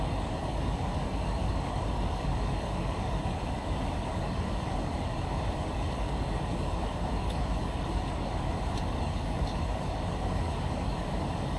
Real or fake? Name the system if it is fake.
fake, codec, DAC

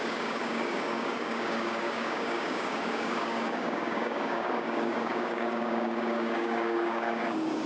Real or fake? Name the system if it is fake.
fake, codec, DAC